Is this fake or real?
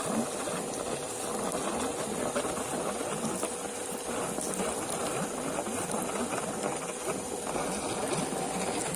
real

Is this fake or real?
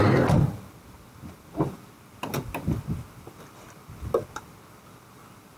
real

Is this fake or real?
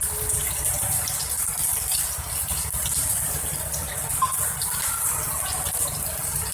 real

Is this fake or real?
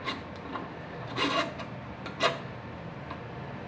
real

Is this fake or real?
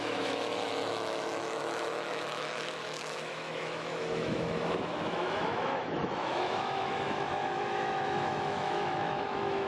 fake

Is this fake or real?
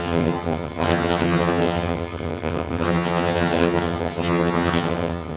fake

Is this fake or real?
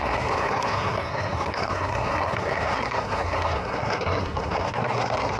fake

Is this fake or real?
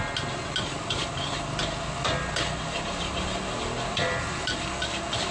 real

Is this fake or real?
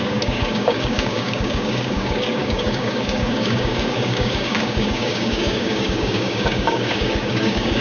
fake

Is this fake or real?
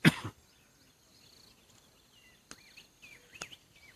real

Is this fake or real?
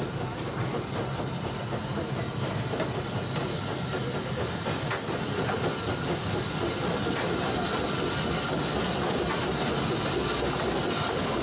real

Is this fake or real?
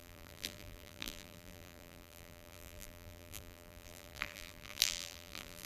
fake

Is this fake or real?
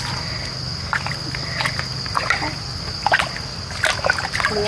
real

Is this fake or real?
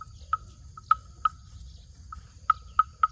real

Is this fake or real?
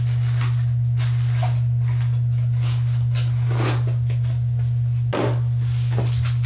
real